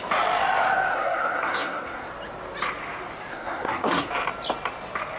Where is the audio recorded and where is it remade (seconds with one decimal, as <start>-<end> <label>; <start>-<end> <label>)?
0.0-0.9 recorded; 0.9-2.1 remade; 2.1-3.3 recorded; 3.3-4.1 remade; 4.1-5.2 recorded

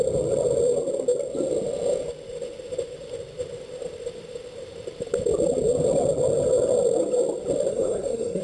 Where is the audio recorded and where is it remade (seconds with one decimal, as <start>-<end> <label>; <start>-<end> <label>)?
0.0-7.7 recorded; 7.7-8.4 remade

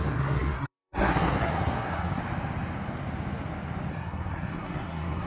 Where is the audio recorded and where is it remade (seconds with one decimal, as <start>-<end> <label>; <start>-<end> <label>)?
0.0-2.2 remade; 2.2-3.9 recorded; 3.9-5.3 remade

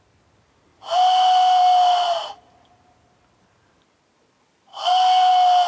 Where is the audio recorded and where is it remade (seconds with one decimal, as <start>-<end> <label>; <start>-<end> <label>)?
0.0-4.7 recorded; 4.7-5.3 remade; 5.3-5.7 recorded

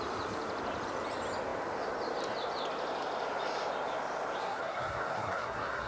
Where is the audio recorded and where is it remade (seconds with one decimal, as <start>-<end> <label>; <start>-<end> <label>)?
0.0-4.4 recorded; 4.4-5.9 remade